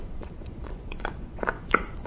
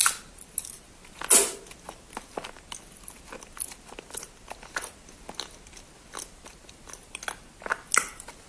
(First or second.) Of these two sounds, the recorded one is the second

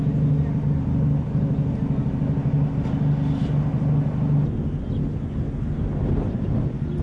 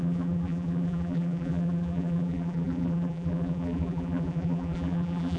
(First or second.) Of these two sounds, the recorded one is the first